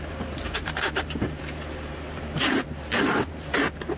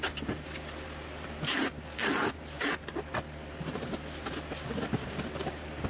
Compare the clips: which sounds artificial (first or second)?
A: first